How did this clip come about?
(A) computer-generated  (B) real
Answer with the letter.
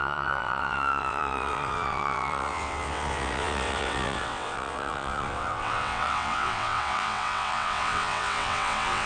A